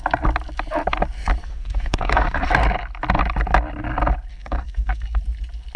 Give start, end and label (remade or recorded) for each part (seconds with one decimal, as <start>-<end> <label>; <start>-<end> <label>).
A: 0.0-1.4 recorded; 1.4-2.5 remade; 2.5-4.3 recorded; 4.3-5.2 remade; 5.2-5.8 recorded